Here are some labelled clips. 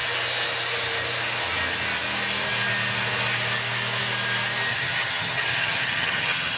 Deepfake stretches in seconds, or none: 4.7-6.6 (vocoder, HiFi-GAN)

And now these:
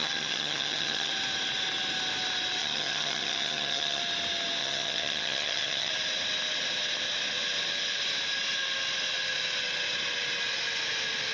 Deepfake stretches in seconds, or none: 0.0-1.1 (vocoder, HiFi-GAN); 2.6-4.0; 4.6-5.9

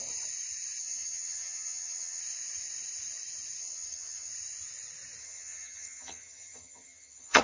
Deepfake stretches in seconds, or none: 0.8-2.2 (vocoder, HiFi-GAN); 3.6-4.3; 5.2-7.4

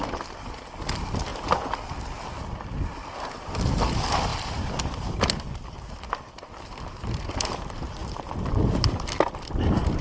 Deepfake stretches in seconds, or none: none

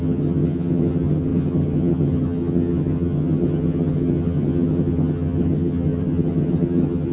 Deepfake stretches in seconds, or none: 0.0-7.1 (vocoder, HiFi-GAN)

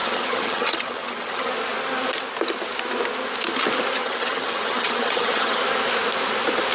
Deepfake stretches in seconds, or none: 0.0-1.5 (vocoder, HiFi-GAN); 4.0-5.6

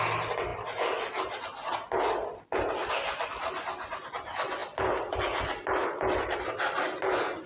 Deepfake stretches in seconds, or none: none

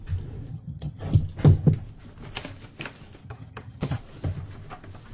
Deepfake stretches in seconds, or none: 0.5-1.0 (vocoder, HiFi-GAN); 3.2-4.0